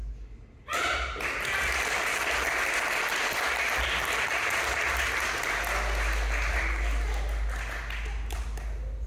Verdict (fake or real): real